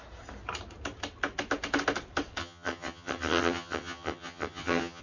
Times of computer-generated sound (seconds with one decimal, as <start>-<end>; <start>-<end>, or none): 2.4-5.0